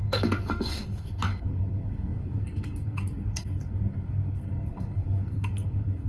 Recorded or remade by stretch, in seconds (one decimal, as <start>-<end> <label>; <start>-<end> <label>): 0.0-6.1 remade